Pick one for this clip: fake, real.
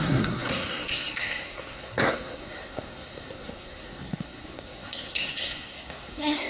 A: fake